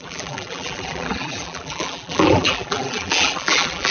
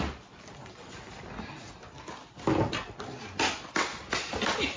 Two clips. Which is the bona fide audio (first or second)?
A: second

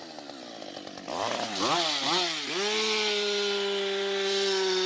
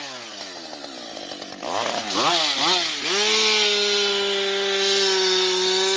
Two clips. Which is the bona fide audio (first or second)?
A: second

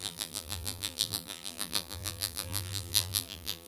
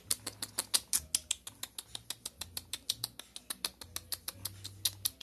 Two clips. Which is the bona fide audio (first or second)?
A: second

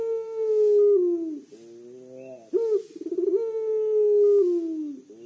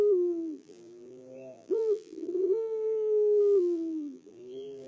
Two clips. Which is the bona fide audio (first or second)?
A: first